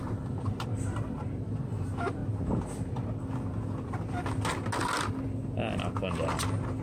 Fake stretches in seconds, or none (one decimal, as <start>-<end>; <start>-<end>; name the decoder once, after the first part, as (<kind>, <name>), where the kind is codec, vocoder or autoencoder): 0.0-2.2 (vocoder, BigVGAN v2); 5.8-6.8